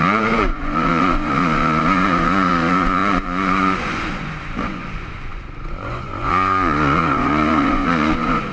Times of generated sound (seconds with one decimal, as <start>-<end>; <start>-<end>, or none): 0.0-8.5